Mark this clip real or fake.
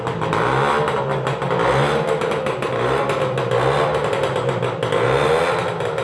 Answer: real